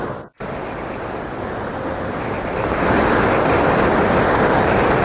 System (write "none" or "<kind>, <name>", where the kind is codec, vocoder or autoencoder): none